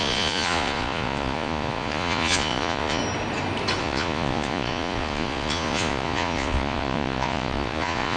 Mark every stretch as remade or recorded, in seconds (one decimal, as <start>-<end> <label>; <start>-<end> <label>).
0.0-3.0 remade; 3.0-3.8 recorded; 3.8-8.2 remade